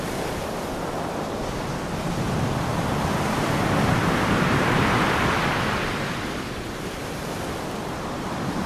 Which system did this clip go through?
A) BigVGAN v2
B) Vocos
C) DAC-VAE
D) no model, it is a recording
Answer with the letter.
D